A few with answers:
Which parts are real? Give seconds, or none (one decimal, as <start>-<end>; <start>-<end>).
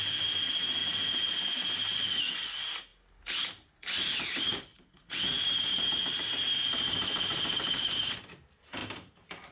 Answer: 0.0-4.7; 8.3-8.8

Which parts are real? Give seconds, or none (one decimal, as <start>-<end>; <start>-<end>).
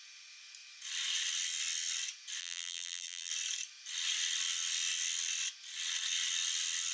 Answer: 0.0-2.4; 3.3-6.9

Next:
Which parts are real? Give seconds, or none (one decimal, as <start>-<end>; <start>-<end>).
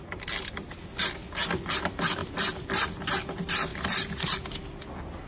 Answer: 0.0-2.2; 2.9-3.7